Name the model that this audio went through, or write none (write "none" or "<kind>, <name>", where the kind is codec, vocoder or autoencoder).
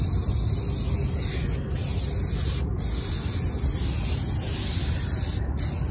none